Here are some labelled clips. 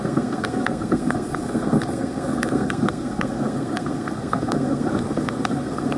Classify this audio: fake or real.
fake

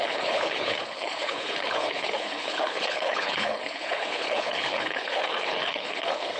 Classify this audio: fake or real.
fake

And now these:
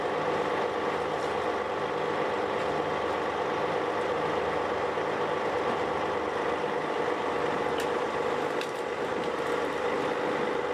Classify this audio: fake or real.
real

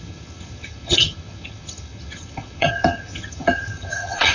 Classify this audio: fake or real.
fake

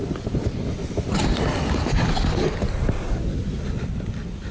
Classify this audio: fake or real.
real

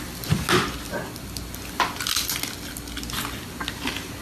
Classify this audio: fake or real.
real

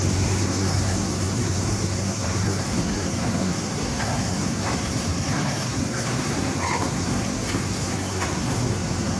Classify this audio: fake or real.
fake